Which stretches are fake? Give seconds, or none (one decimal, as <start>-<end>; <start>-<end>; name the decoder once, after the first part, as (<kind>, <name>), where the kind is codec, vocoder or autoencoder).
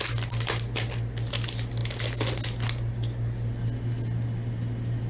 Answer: none